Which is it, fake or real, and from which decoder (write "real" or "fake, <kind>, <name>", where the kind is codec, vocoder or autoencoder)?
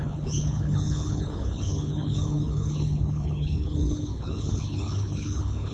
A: fake, codec, HILCodec